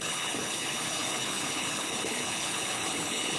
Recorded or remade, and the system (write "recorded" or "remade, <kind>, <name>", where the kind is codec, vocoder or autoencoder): remade, codec, HILCodec